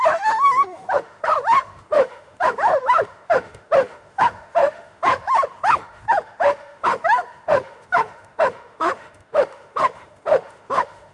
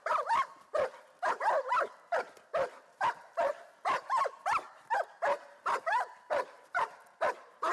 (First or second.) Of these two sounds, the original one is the second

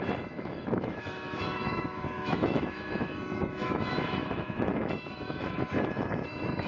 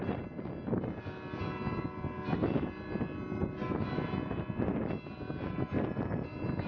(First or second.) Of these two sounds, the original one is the second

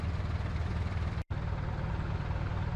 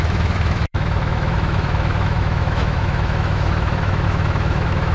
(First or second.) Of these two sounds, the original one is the first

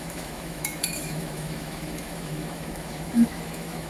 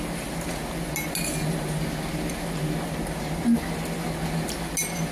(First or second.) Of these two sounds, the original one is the second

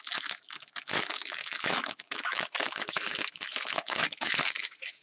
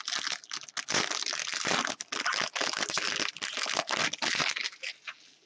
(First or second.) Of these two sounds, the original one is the second